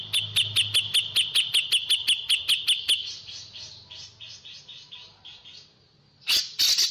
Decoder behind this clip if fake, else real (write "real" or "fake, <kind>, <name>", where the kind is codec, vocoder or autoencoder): real